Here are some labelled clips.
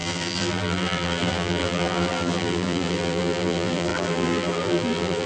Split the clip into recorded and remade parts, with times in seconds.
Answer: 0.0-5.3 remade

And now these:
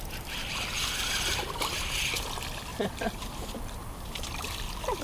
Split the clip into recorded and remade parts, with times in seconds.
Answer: 0.0-2.7 recorded; 2.7-4.6 remade; 4.6-5.0 recorded

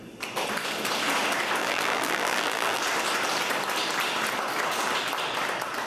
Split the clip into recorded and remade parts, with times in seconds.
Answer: 0.0-1.6 recorded; 1.6-2.8 remade; 2.8-5.9 recorded

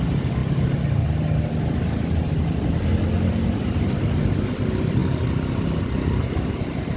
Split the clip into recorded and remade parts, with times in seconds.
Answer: 0.0-7.0 recorded

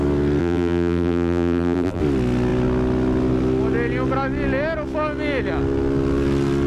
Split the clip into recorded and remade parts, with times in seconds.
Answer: 0.0-0.4 recorded; 0.4-2.0 remade; 2.0-6.7 recorded

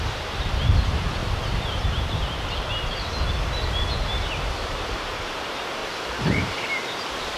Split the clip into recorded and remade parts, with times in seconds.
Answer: 0.0-1.2 remade; 1.2-4.6 recorded; 4.6-7.4 remade

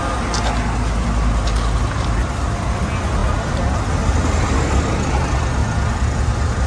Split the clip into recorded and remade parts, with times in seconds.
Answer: 0.0-2.2 recorded; 2.2-2.8 remade; 2.8-6.7 recorded

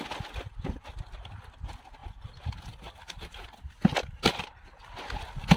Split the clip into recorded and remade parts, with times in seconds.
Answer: 0.0-2.0 recorded; 2.0-4.9 remade; 4.9-5.6 recorded